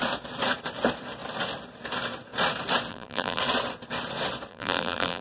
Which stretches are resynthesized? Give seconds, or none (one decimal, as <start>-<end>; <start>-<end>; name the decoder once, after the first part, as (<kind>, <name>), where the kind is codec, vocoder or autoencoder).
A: 2.9-3.4 (vocoder, BigVGAN v2); 4.5-5.2